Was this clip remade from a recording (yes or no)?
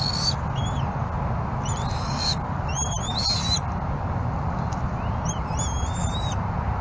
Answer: no